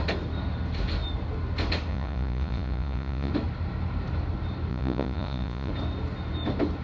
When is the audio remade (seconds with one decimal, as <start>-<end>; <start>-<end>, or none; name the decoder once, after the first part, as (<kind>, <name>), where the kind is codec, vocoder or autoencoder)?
1.9-3.3 (vocoder, Vocos); 4.7-5.7